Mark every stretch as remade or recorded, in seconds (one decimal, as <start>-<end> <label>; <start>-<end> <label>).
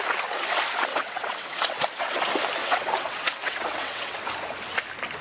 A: 0.0-0.9 recorded; 0.9-2.2 remade; 2.2-2.6 recorded; 2.6-4.2 remade; 4.2-5.2 recorded